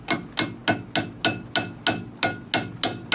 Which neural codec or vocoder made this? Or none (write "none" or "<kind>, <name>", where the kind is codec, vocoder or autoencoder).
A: none